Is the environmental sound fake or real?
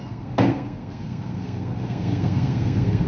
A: fake